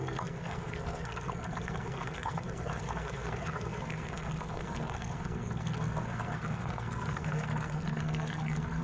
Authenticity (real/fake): fake